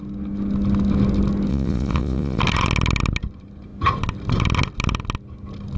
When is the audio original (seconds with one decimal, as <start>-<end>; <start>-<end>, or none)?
0.0-1.5; 2.4-5.8